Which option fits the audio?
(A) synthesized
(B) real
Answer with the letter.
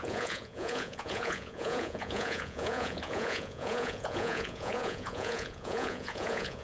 A